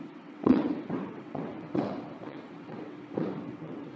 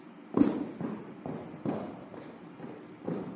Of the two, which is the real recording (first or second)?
second